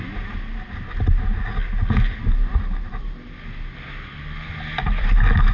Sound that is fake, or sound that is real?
real